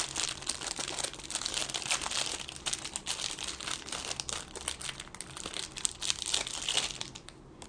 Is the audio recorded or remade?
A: recorded